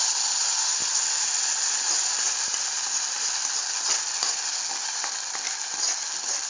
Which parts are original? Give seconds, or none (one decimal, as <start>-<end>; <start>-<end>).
0.0-6.5